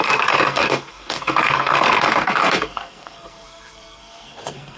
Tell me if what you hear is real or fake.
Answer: fake